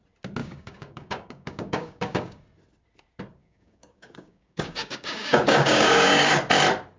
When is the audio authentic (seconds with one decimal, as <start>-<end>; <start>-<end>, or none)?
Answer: 0.0-0.4; 2.4-3.4; 6.3-7.0